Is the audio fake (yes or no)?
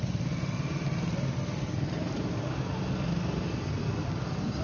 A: no